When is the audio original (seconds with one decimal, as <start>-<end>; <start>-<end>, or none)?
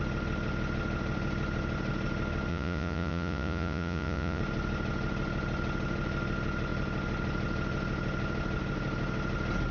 0.0-2.5; 4.4-9.7